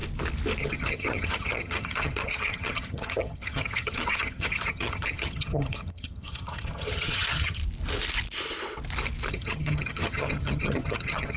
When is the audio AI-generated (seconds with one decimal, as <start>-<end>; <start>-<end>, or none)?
0.6-7.6; 9.3-11.4